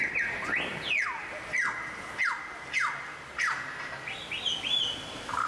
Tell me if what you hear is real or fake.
real